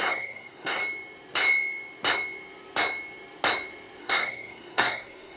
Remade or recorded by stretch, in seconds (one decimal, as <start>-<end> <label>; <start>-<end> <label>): 0.0-0.8 remade; 0.8-4.0 recorded; 4.0-5.4 remade